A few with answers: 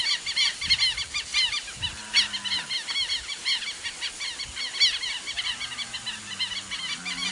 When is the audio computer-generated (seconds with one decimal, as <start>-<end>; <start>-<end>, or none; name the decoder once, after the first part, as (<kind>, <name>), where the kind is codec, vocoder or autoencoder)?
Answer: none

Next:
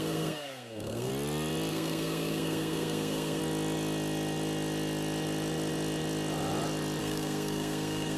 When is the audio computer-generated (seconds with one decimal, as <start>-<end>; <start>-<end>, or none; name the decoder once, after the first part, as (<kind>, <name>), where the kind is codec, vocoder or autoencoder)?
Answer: 0.0-1.1 (codec, SNAC); 1.7-3.4; 7.0-8.2

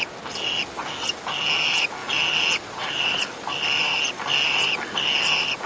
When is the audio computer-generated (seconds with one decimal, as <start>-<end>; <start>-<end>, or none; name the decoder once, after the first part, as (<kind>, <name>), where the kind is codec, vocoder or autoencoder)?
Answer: none